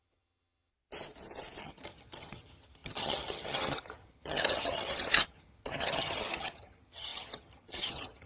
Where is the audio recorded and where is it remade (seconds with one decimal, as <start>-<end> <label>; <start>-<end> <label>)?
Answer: 0.0-0.7 remade; 0.7-1.6 recorded; 1.6-8.3 remade